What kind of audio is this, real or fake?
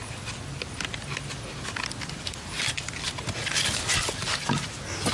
real